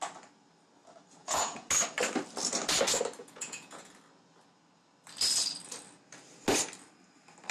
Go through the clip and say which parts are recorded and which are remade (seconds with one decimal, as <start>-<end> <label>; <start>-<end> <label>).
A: 0.0-1.2 recorded; 1.2-1.7 remade; 1.7-3.2 recorded; 3.2-3.9 remade; 3.9-7.5 recorded